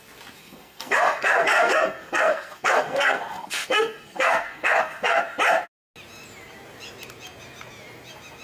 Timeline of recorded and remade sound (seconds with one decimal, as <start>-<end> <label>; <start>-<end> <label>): 0.0-0.4 recorded; 0.4-5.2 remade; 5.2-8.4 recorded